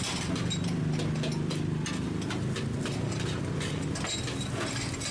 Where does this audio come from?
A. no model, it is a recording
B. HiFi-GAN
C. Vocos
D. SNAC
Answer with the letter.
A